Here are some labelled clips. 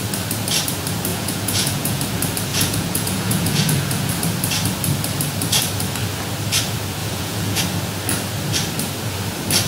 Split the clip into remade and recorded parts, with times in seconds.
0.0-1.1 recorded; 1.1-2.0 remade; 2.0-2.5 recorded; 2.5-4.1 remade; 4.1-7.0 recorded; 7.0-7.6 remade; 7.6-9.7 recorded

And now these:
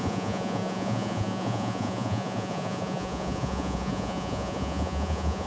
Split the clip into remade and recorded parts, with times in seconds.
0.0-5.5 remade